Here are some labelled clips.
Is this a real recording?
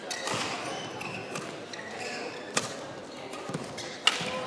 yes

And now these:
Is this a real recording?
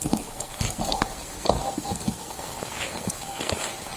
no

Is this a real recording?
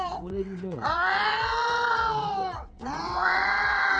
no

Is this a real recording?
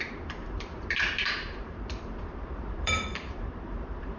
no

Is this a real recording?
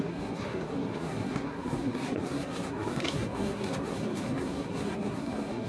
no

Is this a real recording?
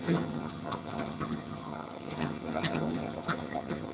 no